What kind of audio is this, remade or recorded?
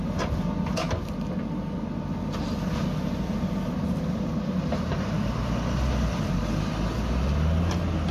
recorded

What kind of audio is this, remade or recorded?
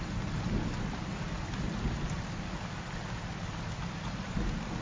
recorded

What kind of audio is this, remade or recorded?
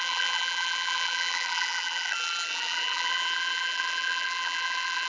remade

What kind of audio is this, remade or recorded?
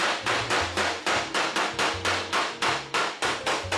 recorded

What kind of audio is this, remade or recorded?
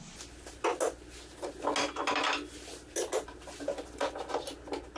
recorded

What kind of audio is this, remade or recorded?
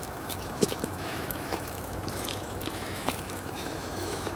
remade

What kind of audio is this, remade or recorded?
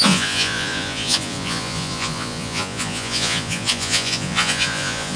remade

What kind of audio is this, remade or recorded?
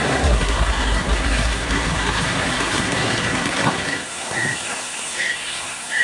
remade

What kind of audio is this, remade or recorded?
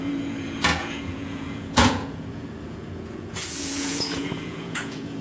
remade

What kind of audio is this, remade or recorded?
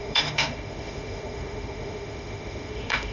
remade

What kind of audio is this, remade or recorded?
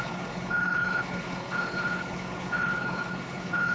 remade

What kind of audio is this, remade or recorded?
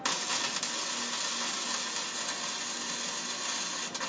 recorded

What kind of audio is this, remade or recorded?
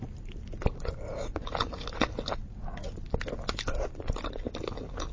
recorded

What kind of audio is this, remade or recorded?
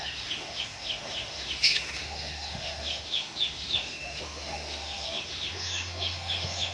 remade